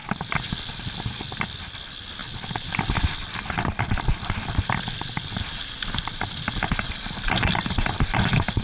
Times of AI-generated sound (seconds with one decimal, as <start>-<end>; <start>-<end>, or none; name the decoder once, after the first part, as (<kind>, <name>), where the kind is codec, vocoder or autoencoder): 2.2-5.2 (vocoder, BigVGAN v2)